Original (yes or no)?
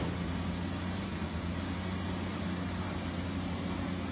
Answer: yes